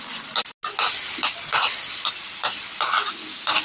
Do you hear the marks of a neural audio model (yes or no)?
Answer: no